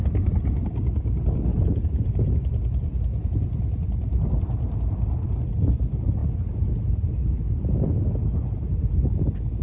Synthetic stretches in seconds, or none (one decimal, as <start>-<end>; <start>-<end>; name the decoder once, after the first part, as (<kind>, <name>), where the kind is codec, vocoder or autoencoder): 1.5-4.3 (vocoder, BigVGAN v2)